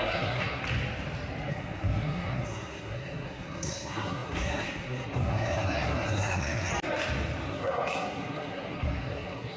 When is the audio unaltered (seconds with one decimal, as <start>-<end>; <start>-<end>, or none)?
0.6-1.5; 6.7-7.5